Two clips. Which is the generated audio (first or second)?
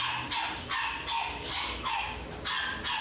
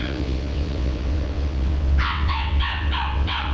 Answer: second